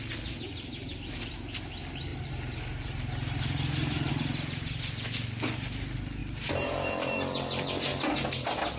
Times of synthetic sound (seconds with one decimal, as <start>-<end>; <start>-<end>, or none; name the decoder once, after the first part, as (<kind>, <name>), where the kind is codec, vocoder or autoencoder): 2.1-4.1 (vocoder, BigVGAN v2); 6.2-6.9